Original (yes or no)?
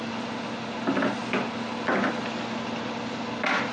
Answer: yes